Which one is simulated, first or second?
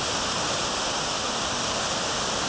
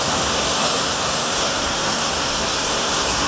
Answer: second